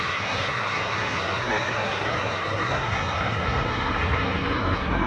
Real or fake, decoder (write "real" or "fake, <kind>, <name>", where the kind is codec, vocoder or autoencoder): fake, codec, SNAC